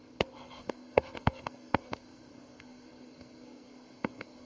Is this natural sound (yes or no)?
no